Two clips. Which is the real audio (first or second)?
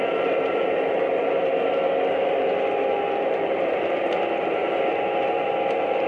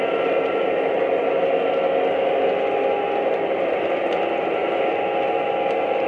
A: second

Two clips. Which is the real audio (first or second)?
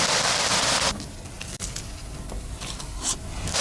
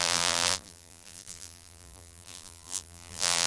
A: first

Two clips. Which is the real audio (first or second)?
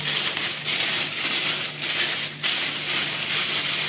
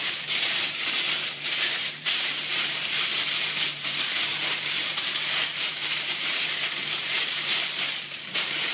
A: first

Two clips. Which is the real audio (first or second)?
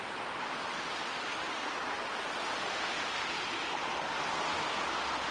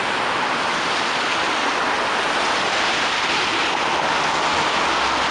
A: second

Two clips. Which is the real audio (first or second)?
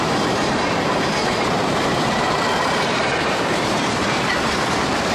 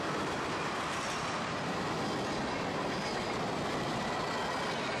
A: second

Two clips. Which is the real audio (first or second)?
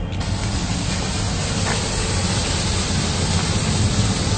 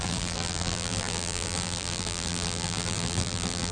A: first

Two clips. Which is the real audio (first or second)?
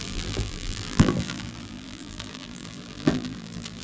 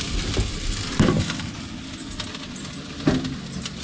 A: second